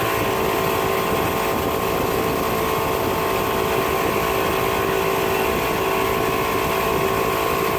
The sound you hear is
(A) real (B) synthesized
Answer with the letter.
A